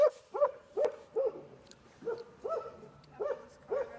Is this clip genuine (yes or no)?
no